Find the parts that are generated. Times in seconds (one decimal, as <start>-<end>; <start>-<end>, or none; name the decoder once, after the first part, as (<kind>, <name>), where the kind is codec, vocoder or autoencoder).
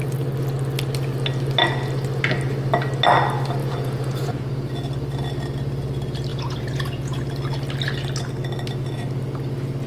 3.6-4.7 (vocoder, Vocos); 6.3-7.2